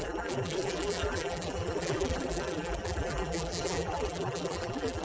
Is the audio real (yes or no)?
no